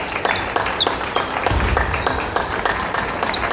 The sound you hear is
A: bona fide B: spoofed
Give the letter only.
A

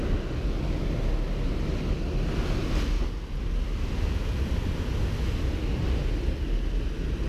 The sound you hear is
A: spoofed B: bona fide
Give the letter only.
B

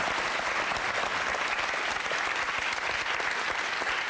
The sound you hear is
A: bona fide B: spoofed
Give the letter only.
A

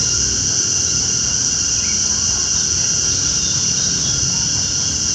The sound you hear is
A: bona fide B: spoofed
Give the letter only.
A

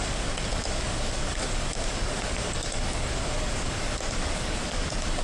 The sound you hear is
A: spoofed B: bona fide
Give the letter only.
A